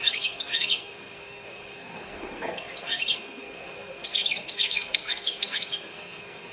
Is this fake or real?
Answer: fake